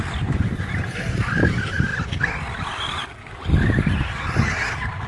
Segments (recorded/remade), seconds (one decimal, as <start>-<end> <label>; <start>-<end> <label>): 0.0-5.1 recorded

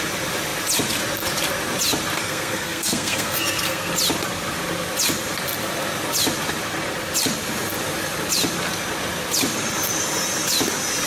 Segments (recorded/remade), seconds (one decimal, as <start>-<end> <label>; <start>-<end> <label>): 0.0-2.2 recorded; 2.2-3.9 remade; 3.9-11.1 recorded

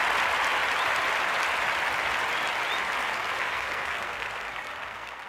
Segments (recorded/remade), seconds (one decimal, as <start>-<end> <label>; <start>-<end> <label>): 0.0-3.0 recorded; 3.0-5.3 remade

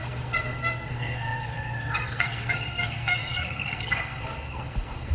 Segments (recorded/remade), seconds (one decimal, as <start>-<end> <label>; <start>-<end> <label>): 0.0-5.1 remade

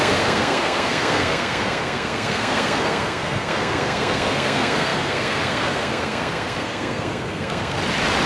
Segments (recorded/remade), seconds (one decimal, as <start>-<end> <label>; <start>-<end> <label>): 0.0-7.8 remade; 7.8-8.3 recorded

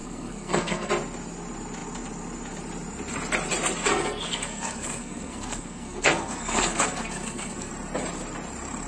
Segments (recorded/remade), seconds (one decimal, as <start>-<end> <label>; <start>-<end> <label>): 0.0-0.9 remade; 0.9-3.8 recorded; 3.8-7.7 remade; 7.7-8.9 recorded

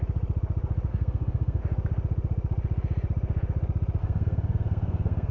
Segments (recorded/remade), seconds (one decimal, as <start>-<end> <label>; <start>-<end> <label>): 0.0-0.9 recorded; 0.9-1.6 remade; 1.6-4.0 recorded; 4.0-5.3 remade